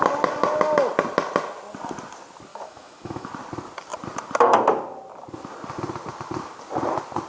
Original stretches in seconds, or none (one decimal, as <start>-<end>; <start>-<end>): 0.0-2.5; 3.3-7.3